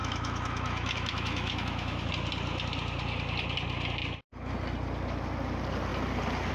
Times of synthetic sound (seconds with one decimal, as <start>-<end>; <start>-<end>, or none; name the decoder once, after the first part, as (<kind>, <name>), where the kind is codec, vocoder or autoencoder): 0.0-2.1 (autoencoder, DAC-VAE)